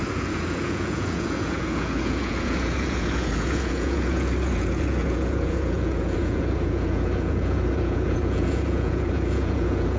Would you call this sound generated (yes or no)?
yes